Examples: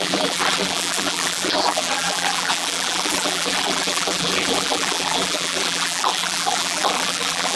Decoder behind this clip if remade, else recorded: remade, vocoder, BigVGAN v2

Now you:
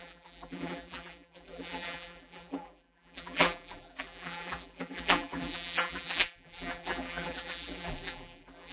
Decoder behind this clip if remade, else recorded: remade, vocoder, BigVGAN v2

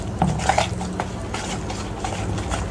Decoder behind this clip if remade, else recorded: recorded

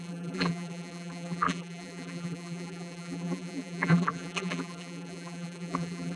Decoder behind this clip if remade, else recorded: remade, vocoder, BigVGAN v2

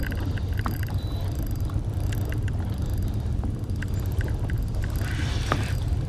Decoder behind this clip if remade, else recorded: recorded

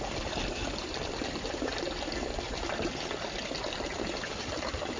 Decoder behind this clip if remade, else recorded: remade, vocoder, BigVGAN v2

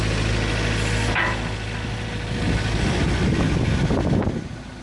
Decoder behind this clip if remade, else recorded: recorded